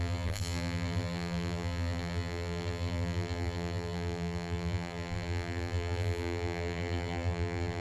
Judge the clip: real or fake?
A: fake